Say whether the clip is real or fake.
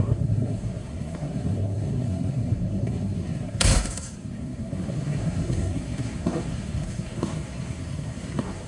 fake